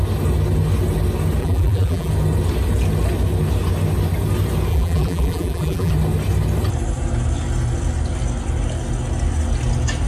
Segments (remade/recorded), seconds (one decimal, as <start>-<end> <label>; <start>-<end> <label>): 0.0-1.4 recorded; 1.4-2.1 remade; 2.1-4.7 recorded; 4.7-5.9 remade; 5.9-10.1 recorded